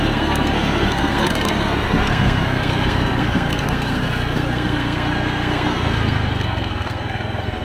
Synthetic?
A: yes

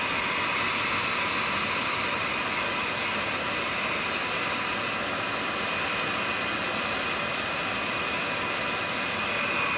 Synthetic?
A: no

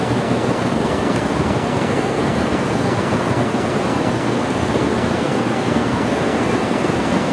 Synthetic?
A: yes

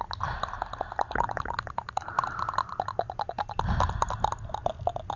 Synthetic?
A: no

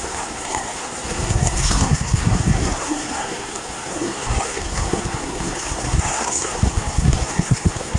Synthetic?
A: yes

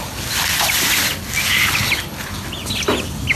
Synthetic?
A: no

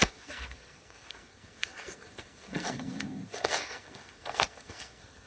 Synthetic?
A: yes